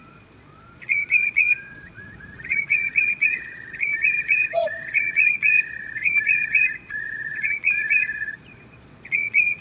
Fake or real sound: fake